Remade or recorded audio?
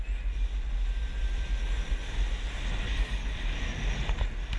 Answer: recorded